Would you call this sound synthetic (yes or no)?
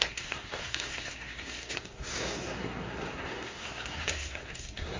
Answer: yes